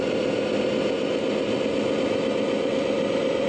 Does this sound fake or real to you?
real